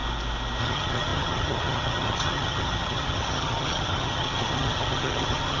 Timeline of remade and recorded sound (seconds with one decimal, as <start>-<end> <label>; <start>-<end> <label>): 0.0-0.6 recorded; 0.6-5.6 remade